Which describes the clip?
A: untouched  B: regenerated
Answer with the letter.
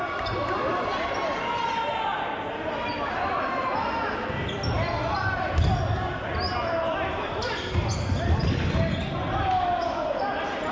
A